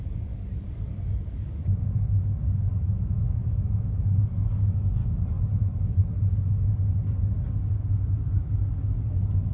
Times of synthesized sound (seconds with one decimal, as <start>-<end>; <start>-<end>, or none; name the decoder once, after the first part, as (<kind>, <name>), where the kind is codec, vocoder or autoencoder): 0.0-5.0 (codec, DAC); 5.6-6.0; 8.4-9.5